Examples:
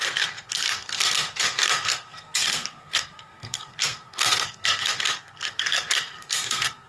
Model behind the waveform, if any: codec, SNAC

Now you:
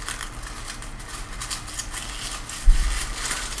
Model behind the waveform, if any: none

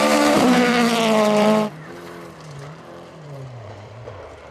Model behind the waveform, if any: vocoder, BigVGAN v2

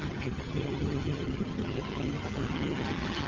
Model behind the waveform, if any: vocoder, HiFi-GAN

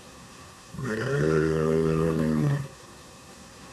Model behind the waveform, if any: codec, SNAC